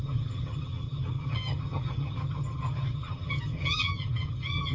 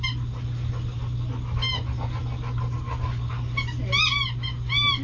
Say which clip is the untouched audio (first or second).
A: second